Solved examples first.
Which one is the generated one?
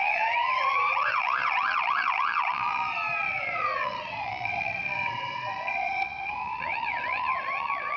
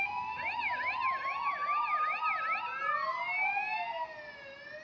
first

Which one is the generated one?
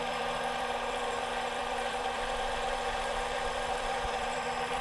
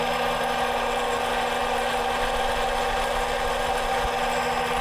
first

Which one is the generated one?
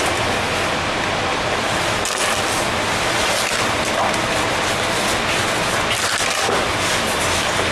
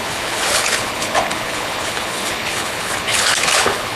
second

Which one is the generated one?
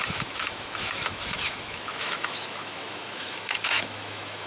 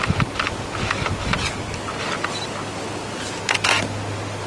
first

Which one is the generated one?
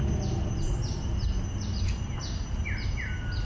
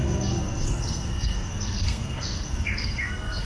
second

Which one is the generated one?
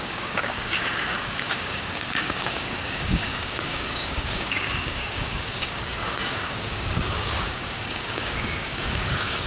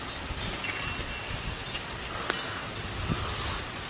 first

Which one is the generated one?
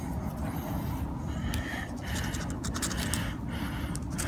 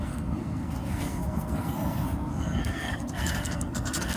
second